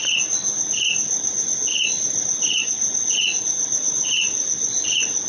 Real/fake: real